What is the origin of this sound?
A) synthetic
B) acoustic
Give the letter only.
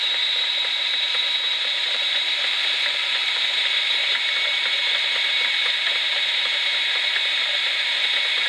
A